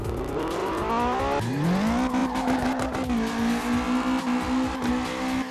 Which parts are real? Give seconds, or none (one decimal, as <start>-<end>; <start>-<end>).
0.0-5.5